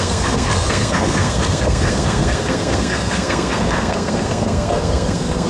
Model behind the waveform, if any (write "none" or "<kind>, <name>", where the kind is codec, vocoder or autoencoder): codec, SNAC